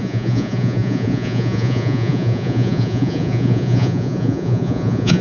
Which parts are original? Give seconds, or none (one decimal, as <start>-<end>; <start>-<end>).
none